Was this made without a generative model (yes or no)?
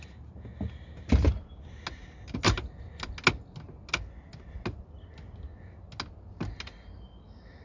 yes